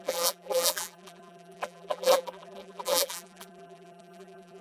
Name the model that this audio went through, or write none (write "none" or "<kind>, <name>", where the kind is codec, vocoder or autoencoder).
vocoder, BigVGAN v2